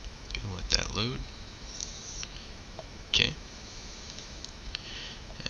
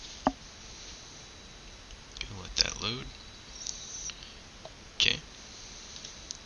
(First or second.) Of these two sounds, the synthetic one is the first